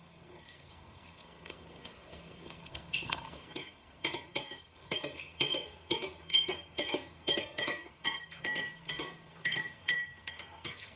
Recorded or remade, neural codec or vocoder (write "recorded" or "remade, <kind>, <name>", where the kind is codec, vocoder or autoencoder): remade, codec, SNAC